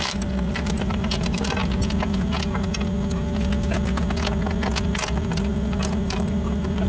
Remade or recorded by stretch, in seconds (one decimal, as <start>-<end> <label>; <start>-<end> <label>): 0.0-1.6 remade; 1.6-5.5 recorded; 5.5-6.9 remade